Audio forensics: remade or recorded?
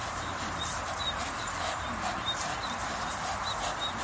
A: recorded